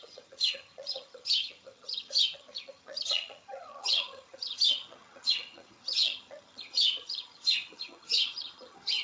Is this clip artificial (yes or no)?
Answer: yes